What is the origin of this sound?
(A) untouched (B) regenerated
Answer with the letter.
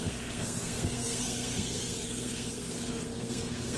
B